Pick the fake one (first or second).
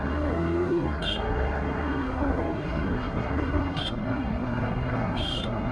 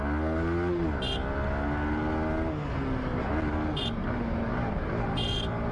first